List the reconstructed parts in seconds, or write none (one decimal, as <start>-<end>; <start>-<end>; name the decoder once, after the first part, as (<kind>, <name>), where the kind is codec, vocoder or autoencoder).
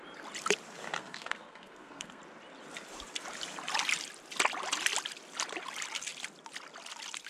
1.0-2.2 (codec, SNAC)